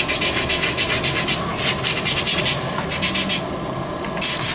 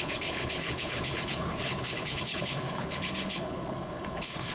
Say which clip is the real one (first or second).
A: first